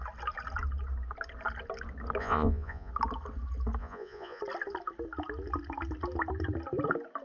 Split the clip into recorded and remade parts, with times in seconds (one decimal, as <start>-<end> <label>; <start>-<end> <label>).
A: 0.0-2.2 recorded; 2.2-2.9 remade; 2.9-3.8 recorded; 3.8-4.4 remade; 4.4-7.2 recorded